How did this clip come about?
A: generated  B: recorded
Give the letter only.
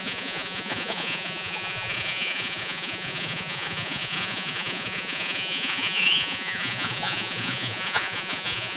A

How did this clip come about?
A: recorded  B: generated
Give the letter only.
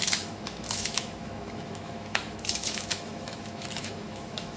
B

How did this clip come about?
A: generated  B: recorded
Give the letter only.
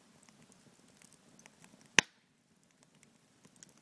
B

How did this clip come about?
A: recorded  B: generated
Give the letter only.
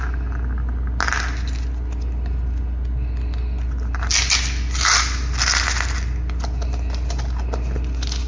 A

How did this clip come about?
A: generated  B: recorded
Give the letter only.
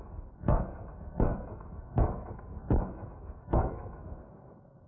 A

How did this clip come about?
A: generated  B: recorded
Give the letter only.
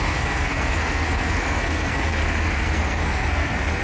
A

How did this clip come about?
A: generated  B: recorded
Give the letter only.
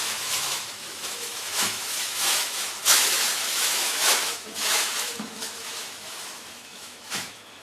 A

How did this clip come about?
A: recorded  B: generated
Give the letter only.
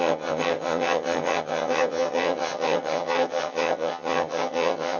B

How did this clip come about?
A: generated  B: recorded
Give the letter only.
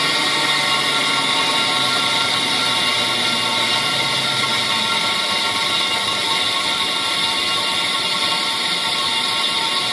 B